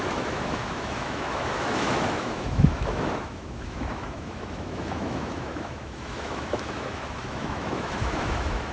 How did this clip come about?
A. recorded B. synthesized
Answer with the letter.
B